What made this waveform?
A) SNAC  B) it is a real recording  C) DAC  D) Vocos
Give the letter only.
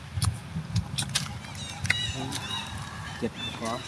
B